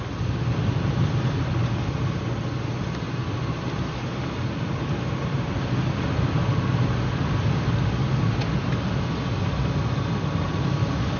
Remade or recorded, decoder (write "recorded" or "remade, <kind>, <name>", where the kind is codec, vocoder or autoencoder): recorded